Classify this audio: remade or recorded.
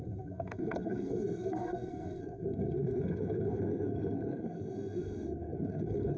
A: remade